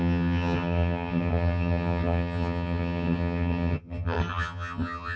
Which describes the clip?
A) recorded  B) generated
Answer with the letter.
B